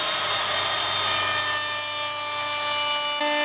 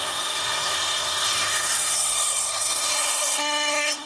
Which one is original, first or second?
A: first